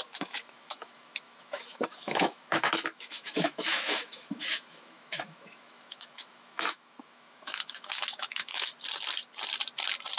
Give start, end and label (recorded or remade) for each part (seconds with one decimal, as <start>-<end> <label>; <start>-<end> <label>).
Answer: 0.0-8.7 remade; 8.7-10.2 recorded